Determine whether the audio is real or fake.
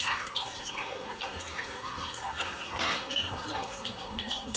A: fake